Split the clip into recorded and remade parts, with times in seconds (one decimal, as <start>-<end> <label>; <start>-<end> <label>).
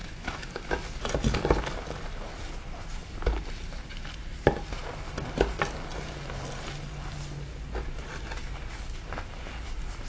0.0-0.7 remade; 0.7-10.1 recorded